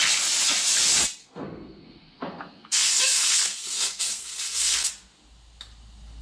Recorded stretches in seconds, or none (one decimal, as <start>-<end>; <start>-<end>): 0.0-1.2; 4.9-6.2